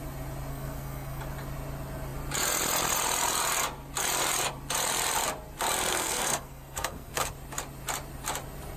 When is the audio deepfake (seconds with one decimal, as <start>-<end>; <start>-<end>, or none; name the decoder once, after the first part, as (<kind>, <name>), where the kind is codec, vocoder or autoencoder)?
0.5-1.2 (codec, SNAC); 5.9-7.3